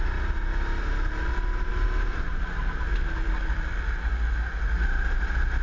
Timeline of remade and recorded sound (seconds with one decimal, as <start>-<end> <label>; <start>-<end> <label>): 0.0-5.6 recorded